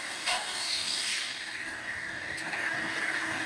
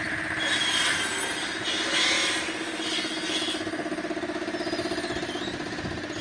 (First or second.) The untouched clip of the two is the second